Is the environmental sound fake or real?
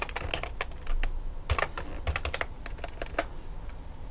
real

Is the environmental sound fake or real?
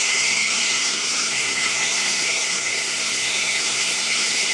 fake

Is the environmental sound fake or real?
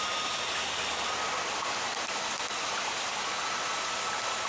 real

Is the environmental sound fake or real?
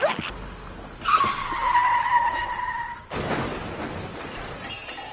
real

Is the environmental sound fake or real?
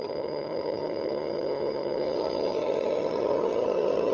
fake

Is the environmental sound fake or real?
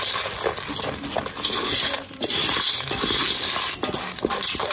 real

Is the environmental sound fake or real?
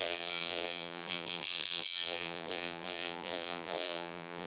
fake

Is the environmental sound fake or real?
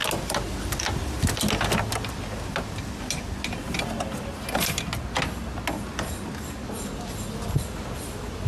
real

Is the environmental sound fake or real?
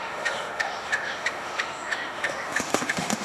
fake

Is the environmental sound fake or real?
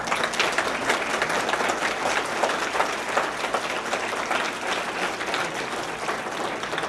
real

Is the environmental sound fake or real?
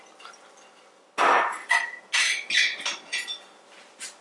real